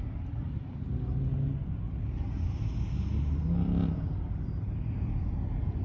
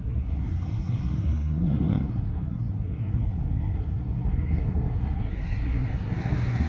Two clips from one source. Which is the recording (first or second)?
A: first